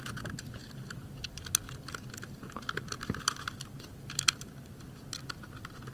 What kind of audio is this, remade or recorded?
recorded